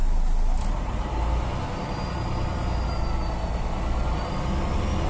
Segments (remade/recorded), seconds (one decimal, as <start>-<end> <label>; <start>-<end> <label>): 0.0-5.1 recorded